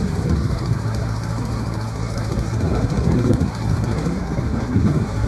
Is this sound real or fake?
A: fake